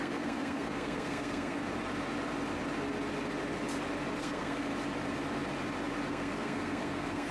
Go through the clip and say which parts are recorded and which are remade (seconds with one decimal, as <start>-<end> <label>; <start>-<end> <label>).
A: 0.0-1.6 remade; 1.6-4.2 recorded; 4.2-4.7 remade; 4.7-6.1 recorded; 6.1-7.3 remade